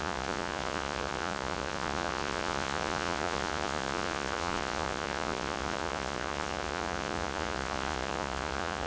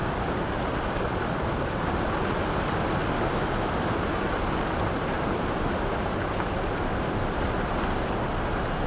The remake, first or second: first